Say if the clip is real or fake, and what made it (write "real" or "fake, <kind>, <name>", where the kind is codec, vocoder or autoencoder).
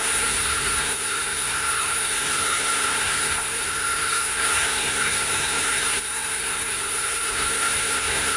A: fake, codec, SNAC